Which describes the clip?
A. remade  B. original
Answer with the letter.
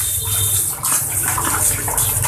B